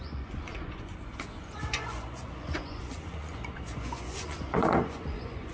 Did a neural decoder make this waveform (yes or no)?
yes